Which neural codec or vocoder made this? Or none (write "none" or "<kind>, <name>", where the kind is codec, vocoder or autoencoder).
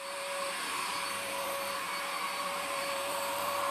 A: vocoder, BigVGAN v2